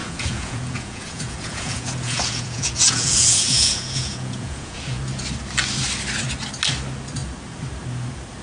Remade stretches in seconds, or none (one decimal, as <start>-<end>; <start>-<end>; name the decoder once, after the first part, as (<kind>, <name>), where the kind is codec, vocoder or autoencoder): 0.0-5.0 (vocoder, Vocos)